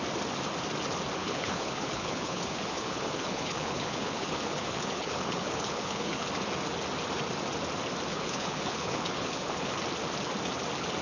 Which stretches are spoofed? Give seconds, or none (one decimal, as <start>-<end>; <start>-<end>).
1.2-6.3; 8.1-9.7